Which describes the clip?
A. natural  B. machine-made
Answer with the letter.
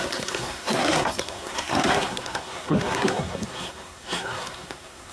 B